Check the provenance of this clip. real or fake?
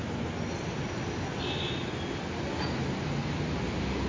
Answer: real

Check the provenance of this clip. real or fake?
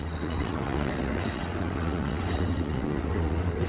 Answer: fake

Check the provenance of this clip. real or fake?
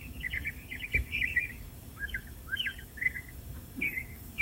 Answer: fake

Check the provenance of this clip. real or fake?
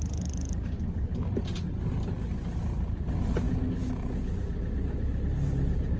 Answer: real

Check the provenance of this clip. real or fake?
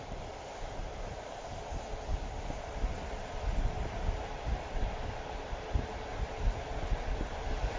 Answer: real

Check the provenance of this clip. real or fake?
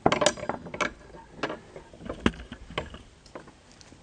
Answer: real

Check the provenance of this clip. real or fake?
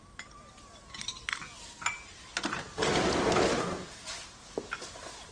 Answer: real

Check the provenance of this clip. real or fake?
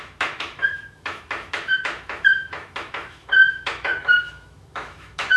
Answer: fake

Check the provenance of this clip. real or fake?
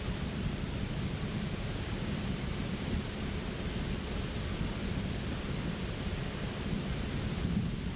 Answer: real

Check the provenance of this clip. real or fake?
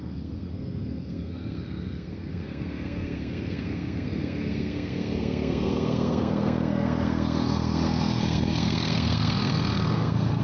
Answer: fake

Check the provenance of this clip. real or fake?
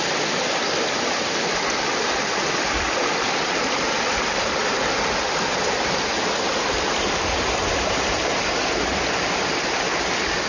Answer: real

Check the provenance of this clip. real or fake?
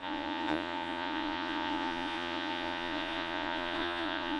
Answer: fake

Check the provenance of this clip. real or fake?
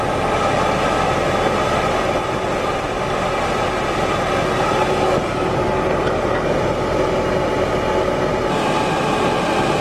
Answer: real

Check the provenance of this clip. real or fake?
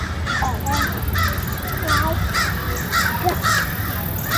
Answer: real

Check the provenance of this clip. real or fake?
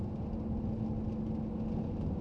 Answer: real